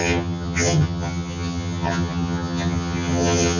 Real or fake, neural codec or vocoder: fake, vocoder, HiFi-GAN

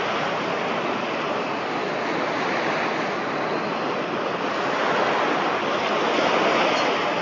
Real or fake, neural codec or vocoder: real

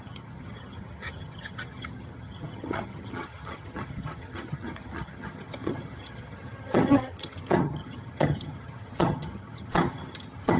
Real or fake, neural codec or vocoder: fake, vocoder, HiFi-GAN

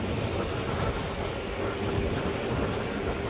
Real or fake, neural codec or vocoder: real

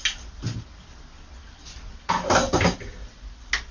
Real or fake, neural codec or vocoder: real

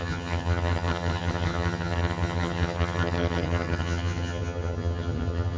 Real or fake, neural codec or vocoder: fake, vocoder, HiFi-GAN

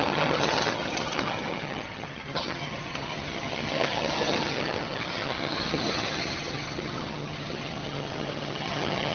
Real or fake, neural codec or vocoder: fake, vocoder, HiFi-GAN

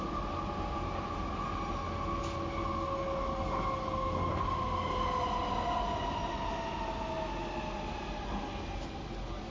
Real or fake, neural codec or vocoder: real